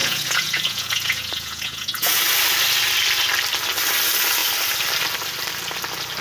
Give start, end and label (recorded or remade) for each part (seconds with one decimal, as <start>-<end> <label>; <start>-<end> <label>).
0.0-2.2 remade; 2.2-6.2 recorded